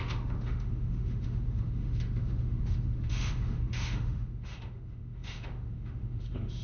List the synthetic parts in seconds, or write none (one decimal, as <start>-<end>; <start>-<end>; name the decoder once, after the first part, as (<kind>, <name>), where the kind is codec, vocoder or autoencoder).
0.0-6.6 (autoencoder, DAC-VAE)